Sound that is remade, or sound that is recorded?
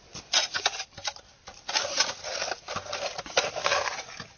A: recorded